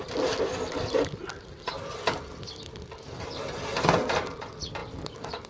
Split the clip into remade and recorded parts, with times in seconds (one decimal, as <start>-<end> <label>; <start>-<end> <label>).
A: 0.0-5.5 recorded

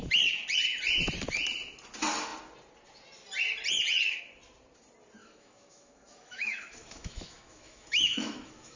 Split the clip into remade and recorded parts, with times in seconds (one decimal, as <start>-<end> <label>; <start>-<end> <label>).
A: 0.0-5.2 recorded; 5.2-8.8 remade